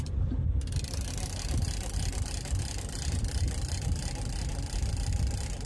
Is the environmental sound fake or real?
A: real